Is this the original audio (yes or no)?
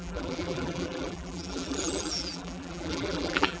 no